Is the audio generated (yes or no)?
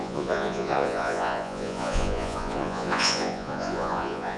yes